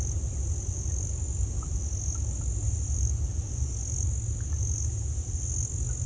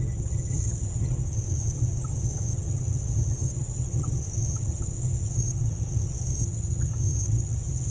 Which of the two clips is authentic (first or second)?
first